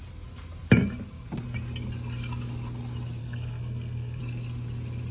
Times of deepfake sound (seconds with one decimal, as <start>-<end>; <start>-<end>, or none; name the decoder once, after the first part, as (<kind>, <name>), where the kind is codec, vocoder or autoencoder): 3.2-4.2 (codec, SNAC)